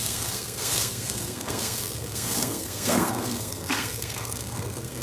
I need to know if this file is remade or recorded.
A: remade